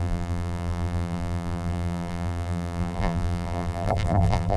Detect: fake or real fake